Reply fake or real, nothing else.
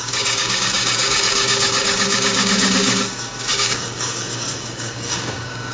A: fake